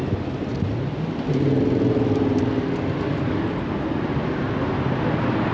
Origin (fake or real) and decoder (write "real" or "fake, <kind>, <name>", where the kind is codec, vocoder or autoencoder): real